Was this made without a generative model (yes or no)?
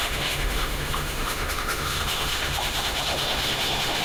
no